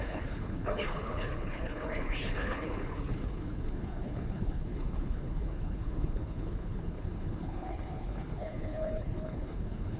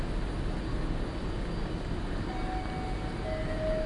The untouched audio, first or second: second